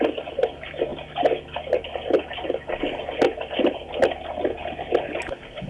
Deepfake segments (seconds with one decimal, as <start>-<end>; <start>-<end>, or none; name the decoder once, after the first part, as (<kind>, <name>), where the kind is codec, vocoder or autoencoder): none